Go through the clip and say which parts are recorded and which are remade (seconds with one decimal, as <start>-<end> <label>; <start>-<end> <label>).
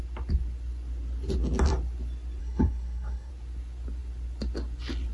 0.0-2.4 recorded; 2.4-3.3 remade; 3.3-5.1 recorded